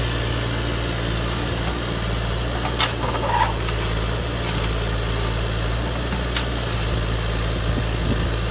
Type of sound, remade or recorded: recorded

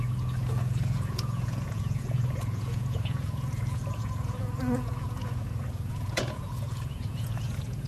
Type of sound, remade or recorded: remade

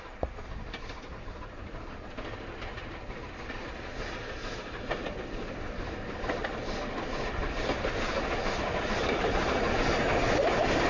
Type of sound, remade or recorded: recorded